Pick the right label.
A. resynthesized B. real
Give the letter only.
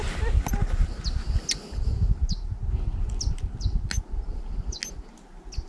B